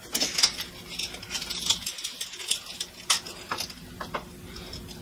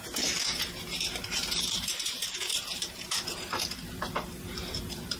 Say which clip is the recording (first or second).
first